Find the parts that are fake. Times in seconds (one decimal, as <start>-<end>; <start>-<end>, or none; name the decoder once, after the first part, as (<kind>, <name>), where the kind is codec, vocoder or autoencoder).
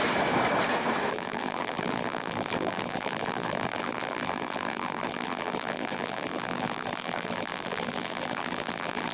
1.1-9.1 (vocoder, BigVGAN v2)